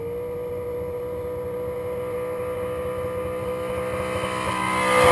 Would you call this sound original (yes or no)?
yes